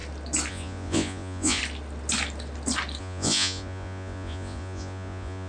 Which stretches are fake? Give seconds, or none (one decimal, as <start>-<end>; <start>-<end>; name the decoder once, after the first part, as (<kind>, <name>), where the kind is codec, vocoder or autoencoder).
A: 0.5-1.6 (vocoder, Vocos); 3.0-5.5